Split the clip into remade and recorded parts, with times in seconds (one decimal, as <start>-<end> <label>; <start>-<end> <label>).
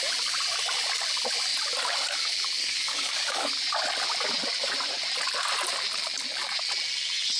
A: 0.0-2.6 recorded; 2.6-3.5 remade; 3.5-7.4 recorded